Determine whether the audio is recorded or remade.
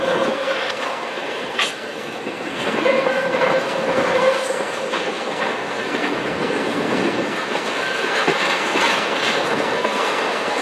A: remade